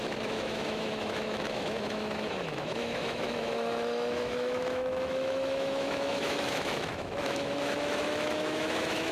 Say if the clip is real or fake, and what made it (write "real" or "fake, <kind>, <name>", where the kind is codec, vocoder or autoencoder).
fake, autoencoder, DAC-VAE